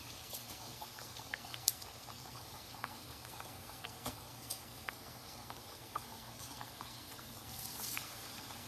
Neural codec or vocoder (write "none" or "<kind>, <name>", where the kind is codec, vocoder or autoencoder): codec, SNAC